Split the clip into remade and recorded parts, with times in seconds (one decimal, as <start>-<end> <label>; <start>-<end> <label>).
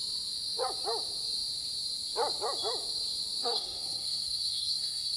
0.0-3.4 recorded; 3.4-5.2 remade